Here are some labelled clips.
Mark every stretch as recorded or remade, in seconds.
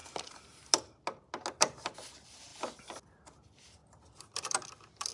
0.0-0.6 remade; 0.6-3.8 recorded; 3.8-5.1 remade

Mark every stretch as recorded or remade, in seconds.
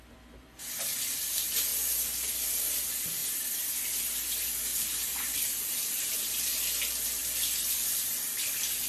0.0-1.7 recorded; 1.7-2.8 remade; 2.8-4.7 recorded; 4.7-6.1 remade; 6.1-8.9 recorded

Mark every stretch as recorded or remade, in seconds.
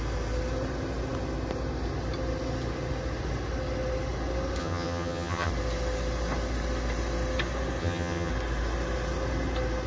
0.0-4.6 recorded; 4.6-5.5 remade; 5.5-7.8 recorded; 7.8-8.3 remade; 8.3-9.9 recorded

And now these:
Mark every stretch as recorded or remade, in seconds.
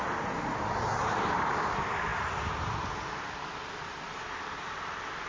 0.0-0.9 recorded; 0.9-1.5 remade; 1.5-5.3 recorded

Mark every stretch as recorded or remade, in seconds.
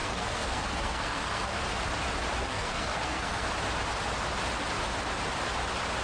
0.0-1.6 remade; 1.6-2.4 recorded; 2.4-3.5 remade; 3.5-6.0 recorded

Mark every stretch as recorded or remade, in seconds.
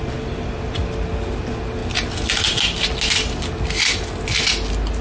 0.0-0.8 remade; 0.8-1.4 recorded; 1.4-1.8 remade; 1.8-5.0 recorded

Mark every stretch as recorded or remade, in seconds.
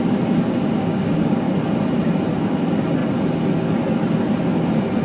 0.0-0.8 recorded; 0.8-1.5 remade; 1.5-5.0 recorded